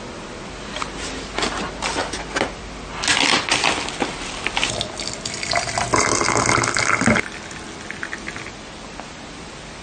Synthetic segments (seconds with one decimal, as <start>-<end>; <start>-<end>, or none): none